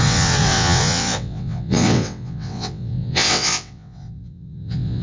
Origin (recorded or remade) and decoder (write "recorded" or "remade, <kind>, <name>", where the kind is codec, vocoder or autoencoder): remade, vocoder, WaveNeXt